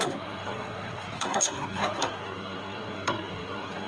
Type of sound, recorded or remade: remade